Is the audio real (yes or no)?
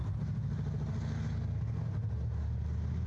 yes